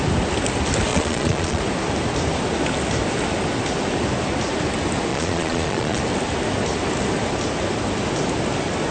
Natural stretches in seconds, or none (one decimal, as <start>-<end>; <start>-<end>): 0.0-0.9; 1.6-5.1; 6.0-8.9